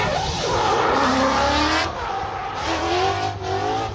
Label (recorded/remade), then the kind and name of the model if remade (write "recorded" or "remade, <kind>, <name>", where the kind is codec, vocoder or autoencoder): recorded